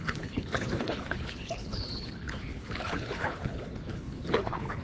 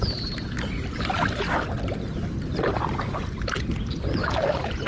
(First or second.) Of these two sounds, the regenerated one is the first